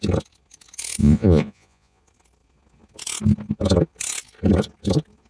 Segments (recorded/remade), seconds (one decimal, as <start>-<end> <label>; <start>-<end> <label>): 0.0-1.0 recorded; 1.0-2.0 remade; 2.0-5.3 recorded

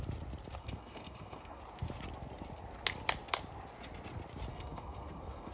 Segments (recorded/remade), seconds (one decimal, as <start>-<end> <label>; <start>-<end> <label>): 0.0-0.6 recorded; 0.6-1.6 remade; 1.6-4.5 recorded; 4.5-5.5 remade

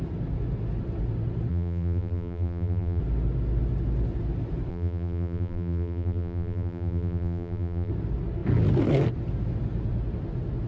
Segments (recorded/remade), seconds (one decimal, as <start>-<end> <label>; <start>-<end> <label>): 0.0-1.5 recorded; 1.5-3.0 remade; 3.0-4.7 recorded; 4.7-7.9 remade; 7.9-10.7 recorded

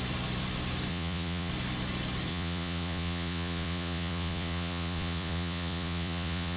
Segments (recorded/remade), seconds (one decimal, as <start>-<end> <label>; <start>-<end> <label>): 0.0-0.9 recorded; 0.9-1.5 remade; 1.5-2.3 recorded; 2.3-6.6 remade

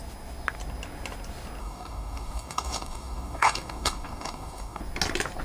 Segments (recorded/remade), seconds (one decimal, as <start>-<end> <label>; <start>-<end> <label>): 0.0-1.6 recorded; 1.6-4.8 remade; 4.8-5.4 recorded

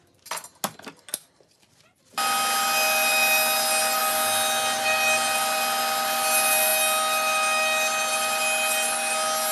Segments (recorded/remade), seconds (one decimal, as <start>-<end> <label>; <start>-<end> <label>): 0.0-9.5 recorded